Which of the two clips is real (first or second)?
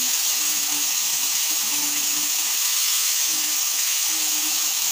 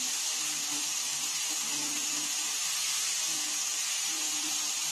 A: second